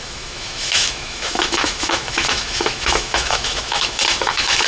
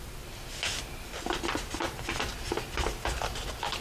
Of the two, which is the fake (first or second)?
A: first